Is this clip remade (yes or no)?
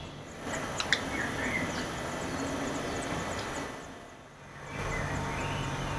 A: no